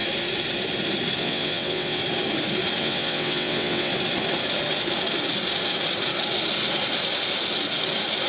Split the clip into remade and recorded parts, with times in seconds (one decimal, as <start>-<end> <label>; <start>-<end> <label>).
0.0-1.2 recorded; 1.2-2.0 remade; 2.0-2.8 recorded; 2.8-3.9 remade; 3.9-8.3 recorded